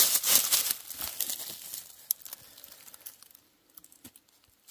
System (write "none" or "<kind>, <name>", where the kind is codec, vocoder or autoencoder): none